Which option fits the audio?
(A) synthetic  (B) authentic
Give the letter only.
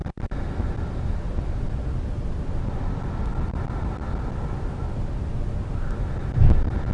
B